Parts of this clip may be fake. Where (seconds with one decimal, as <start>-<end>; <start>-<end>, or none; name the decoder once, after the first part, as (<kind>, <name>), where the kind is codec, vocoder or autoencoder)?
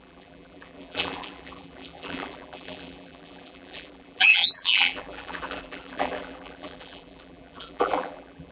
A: 0.0-8.5 (vocoder, BigVGAN v2)